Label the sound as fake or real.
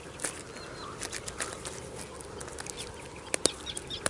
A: real